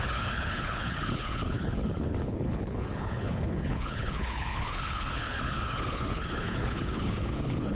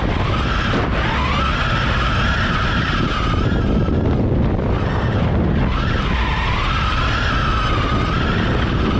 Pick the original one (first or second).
second